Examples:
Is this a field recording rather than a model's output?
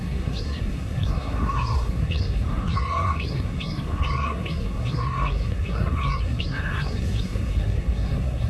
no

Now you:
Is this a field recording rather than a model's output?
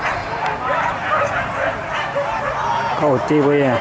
yes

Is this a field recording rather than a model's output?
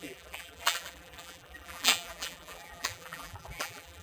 no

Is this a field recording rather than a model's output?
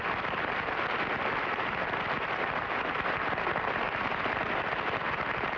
yes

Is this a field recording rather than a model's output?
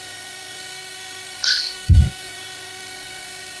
no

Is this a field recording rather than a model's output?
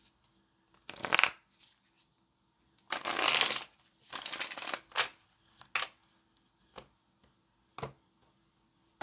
yes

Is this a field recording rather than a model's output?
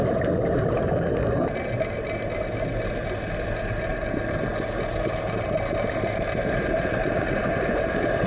yes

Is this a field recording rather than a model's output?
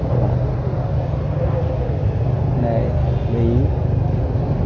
yes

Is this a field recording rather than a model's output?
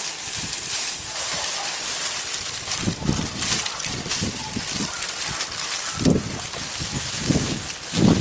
yes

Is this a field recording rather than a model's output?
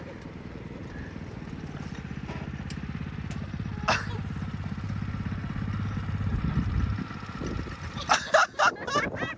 yes